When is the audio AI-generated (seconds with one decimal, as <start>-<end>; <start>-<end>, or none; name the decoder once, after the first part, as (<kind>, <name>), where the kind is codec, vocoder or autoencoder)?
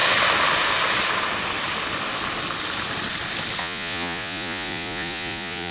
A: 3.6-5.7 (vocoder, Vocos)